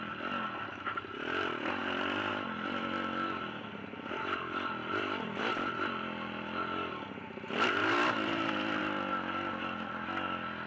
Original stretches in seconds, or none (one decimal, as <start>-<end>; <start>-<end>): 0.0-4.8; 5.4-7.8; 8.8-10.7